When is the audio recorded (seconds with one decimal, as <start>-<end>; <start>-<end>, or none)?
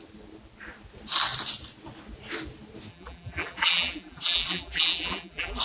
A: 0.0-2.9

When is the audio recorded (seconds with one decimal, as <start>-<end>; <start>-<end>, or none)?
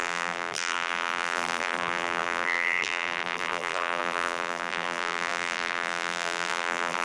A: none